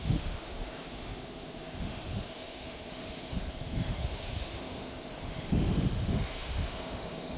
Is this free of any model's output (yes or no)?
no